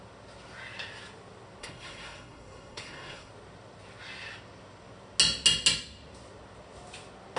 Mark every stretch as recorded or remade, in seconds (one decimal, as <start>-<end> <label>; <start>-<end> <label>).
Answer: 0.0-1.6 recorded; 1.6-3.3 remade; 3.3-7.4 recorded